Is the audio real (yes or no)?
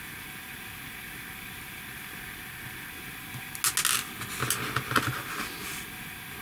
yes